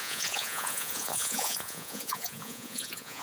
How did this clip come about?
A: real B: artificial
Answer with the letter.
B